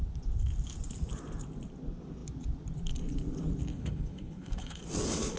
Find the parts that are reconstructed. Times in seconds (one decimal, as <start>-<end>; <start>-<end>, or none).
3.7-4.8